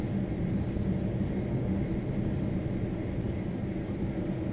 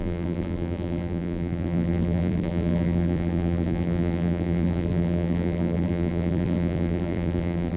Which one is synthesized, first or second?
second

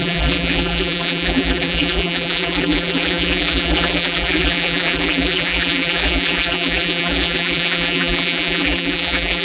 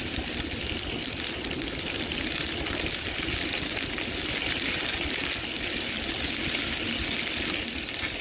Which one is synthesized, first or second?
first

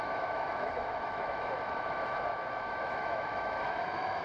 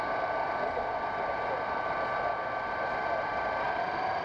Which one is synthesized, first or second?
first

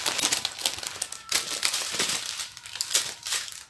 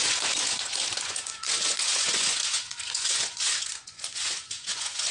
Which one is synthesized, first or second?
second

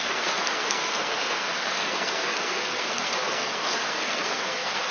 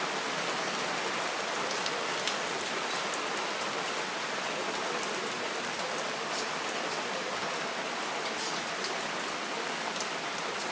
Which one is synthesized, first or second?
first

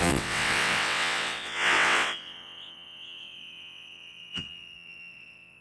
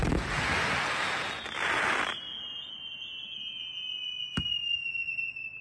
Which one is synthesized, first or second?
first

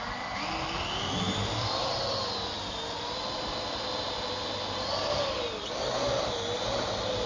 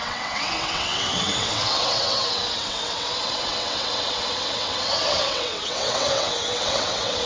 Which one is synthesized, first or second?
second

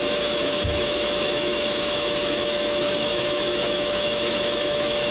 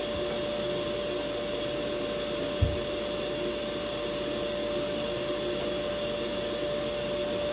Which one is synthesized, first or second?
first